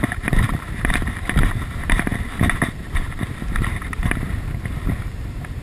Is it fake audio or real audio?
fake